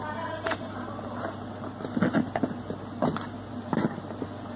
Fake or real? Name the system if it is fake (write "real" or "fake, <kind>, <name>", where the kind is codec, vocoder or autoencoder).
real